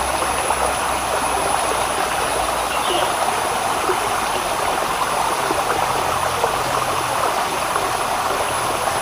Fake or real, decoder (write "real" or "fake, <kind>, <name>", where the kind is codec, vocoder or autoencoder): real